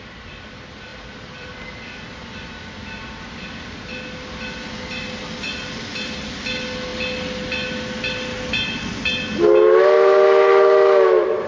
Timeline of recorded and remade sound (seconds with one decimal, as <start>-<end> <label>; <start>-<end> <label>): 0.0-0.9 recorded; 0.9-1.5 remade; 1.5-11.5 recorded